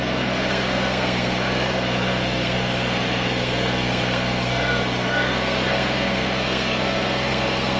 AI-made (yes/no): yes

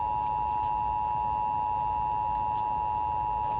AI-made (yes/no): no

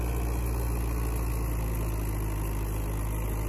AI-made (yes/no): no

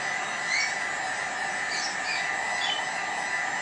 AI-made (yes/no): no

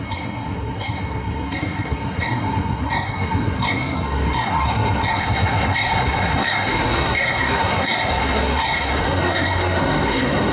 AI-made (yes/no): yes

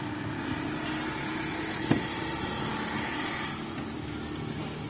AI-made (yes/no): no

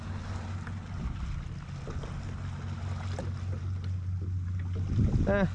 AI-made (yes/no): no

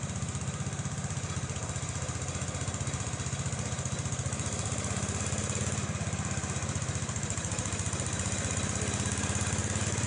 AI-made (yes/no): no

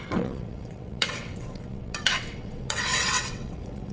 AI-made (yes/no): yes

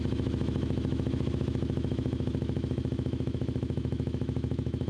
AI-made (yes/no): yes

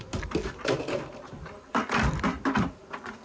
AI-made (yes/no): no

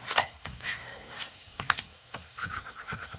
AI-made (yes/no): yes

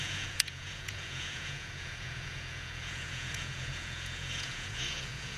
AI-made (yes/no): yes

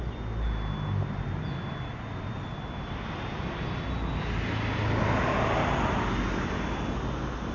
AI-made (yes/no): no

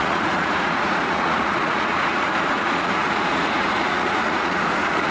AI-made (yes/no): yes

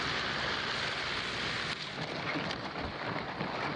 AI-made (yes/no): no